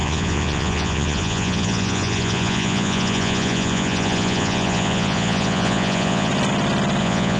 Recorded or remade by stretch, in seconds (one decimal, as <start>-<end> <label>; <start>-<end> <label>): 0.0-6.3 remade; 6.3-7.0 recorded; 7.0-7.4 remade